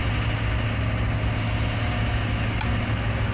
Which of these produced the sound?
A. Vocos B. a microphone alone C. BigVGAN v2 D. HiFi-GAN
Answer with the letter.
B